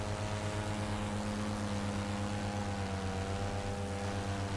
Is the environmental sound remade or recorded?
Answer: recorded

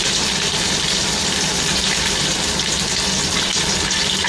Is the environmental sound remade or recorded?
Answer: remade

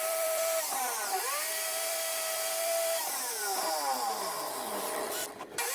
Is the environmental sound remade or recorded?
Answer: remade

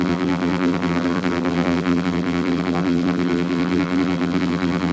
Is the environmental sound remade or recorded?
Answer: remade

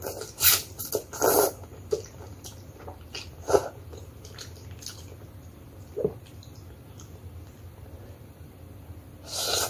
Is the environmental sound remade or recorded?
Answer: recorded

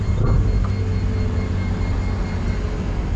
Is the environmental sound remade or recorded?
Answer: recorded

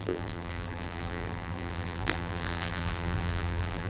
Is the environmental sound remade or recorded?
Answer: remade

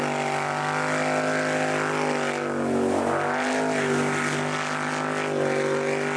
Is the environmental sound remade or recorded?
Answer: recorded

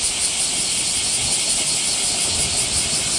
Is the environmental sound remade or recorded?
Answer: recorded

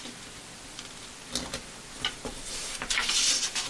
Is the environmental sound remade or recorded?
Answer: recorded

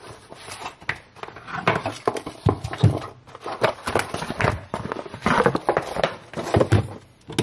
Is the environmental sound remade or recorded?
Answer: recorded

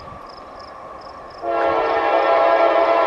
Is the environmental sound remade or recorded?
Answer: recorded